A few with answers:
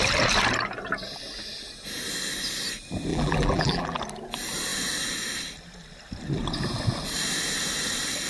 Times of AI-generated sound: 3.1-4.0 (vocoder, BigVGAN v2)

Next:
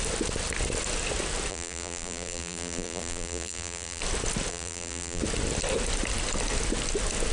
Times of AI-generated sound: 1.5-4.0 (vocoder, BigVGAN v2); 4.5-5.2